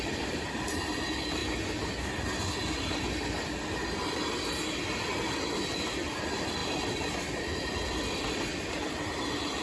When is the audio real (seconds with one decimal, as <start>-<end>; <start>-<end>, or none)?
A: 1.4-5.1